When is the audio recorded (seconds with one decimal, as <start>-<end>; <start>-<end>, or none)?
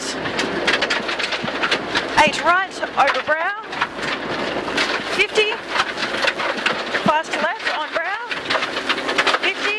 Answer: 0.0-9.8